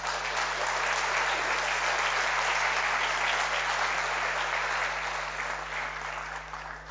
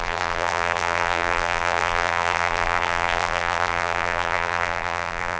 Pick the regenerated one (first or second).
second